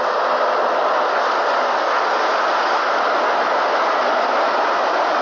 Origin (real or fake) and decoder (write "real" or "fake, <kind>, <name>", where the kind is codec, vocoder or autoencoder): real